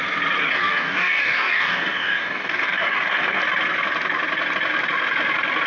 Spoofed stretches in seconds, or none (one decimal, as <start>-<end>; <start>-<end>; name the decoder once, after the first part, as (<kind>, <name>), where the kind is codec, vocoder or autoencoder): 0.4-3.4 (codec, DAC)

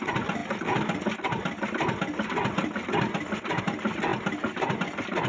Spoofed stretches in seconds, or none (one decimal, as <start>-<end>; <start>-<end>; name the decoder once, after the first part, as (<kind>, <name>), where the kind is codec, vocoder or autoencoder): none

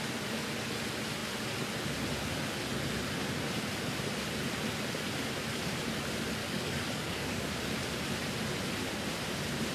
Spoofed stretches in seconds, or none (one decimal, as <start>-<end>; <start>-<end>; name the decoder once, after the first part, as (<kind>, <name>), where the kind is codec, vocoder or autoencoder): 6.4-7.5 (codec, DAC)

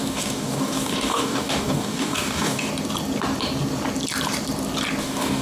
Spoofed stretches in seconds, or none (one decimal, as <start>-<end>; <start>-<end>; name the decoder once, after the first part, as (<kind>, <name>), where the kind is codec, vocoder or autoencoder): 0.0-2.7 (codec, DAC); 5.0-5.4

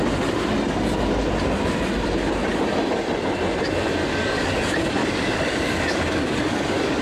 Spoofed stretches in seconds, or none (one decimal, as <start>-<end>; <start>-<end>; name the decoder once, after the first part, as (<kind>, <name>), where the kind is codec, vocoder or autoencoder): 4.0-4.6 (codec, DAC); 5.0-7.0

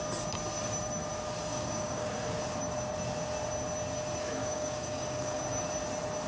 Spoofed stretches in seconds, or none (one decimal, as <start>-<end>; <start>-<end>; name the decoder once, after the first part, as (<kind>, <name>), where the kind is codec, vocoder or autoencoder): 1.5-2.1 (codec, DAC); 4.4-5.4